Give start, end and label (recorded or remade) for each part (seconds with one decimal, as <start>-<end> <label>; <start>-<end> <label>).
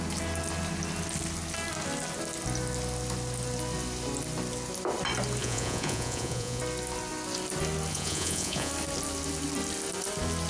0.0-5.4 recorded; 5.4-6.6 remade; 6.6-7.9 recorded; 7.9-8.7 remade; 8.7-10.5 recorded